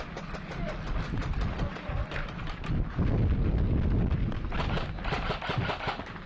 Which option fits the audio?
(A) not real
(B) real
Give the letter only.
B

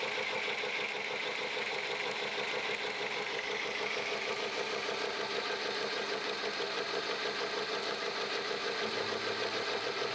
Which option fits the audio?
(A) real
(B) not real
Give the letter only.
A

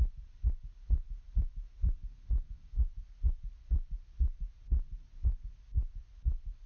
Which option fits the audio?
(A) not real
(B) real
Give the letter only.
B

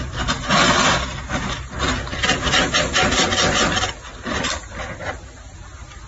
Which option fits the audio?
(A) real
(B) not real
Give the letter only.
A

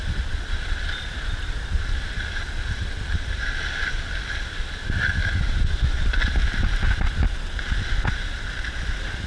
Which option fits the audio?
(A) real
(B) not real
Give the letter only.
A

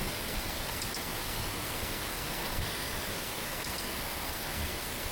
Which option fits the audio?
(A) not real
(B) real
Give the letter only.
A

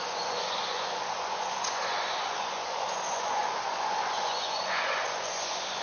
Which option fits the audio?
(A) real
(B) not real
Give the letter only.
B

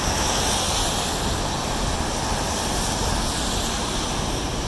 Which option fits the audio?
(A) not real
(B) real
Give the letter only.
B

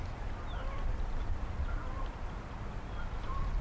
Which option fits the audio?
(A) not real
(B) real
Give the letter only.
B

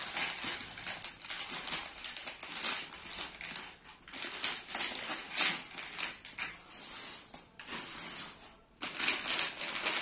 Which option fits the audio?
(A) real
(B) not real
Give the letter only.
A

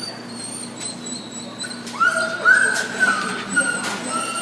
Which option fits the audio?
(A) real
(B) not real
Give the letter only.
B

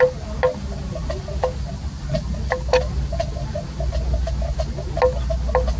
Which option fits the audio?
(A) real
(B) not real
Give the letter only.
A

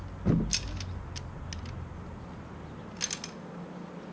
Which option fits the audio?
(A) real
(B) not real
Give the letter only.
A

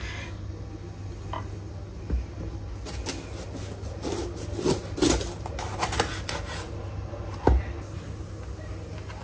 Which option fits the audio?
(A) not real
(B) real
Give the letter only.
B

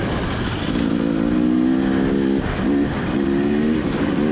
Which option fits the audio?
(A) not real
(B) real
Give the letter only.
B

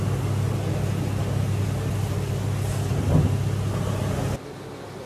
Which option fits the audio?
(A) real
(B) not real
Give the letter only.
A